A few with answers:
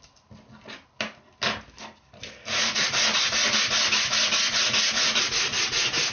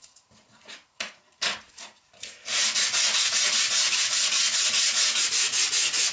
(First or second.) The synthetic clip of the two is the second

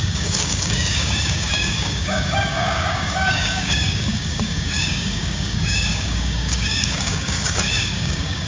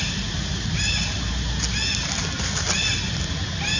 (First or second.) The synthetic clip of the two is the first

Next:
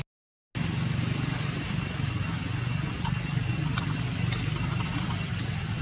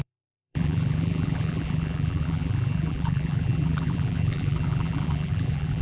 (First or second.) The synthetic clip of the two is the second